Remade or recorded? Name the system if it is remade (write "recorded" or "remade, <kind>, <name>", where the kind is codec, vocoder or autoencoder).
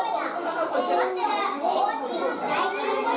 recorded